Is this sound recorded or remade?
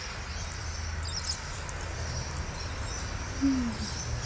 recorded